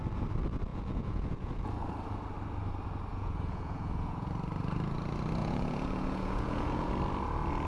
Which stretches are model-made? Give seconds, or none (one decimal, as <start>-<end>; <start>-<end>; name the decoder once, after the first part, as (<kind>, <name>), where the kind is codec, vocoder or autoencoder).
0.7-1.7 (vocoder, Vocos); 3.1-4.3; 5.4-6.9